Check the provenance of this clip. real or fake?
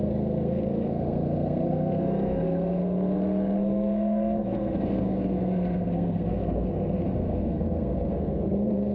fake